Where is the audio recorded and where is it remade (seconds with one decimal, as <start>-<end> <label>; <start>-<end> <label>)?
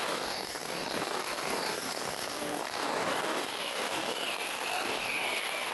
0.0-5.7 remade